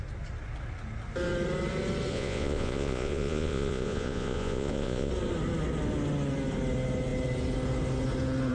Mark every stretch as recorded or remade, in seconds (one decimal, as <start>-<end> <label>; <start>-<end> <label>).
0.0-2.1 recorded; 2.1-5.1 remade; 5.1-8.5 recorded